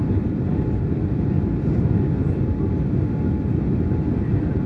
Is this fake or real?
real